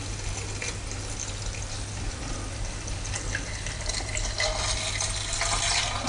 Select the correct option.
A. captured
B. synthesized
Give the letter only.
A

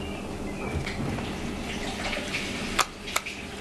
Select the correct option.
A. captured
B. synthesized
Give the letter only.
A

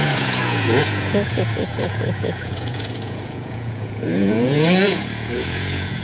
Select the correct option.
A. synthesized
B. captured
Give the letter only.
A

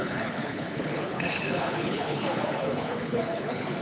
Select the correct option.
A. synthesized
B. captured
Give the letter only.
A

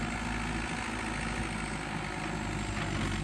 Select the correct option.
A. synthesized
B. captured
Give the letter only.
B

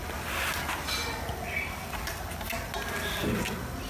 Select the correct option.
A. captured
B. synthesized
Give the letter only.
A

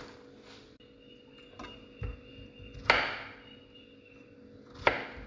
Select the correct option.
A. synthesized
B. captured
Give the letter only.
B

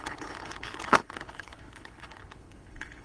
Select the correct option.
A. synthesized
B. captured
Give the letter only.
A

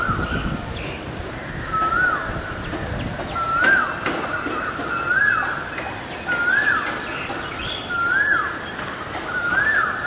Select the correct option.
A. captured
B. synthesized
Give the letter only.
A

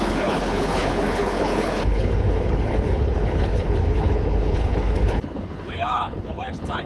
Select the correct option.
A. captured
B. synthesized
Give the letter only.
B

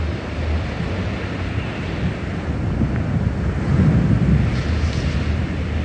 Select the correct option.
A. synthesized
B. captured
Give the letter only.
B